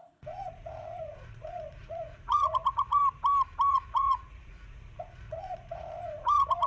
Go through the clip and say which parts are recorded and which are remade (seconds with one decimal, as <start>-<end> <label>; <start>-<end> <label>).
0.0-3.0 remade; 3.0-3.7 recorded; 3.7-6.7 remade